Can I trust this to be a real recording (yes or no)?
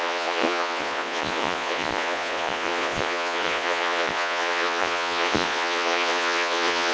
no